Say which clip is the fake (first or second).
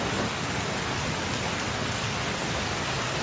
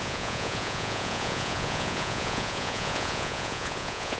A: second